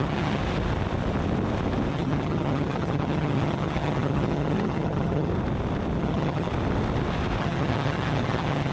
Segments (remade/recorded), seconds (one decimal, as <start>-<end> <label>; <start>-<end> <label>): 0.0-0.4 remade; 0.4-1.9 recorded; 1.9-5.3 remade; 5.3-6.0 recorded; 6.0-6.5 remade; 6.5-7.4 recorded; 7.4-8.7 remade